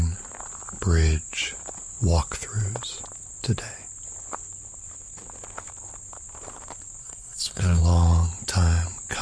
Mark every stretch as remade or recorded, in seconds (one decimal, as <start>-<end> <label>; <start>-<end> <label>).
0.0-7.0 recorded; 7.0-7.8 remade; 7.8-9.2 recorded